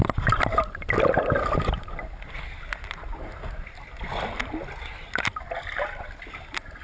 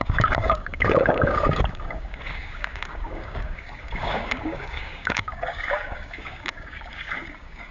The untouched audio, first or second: first